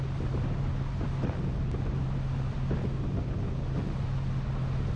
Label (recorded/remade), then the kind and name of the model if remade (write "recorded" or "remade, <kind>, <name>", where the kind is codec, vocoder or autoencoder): recorded